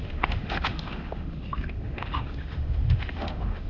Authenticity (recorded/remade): remade